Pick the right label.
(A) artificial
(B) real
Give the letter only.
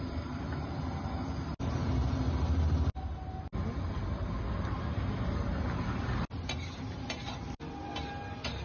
B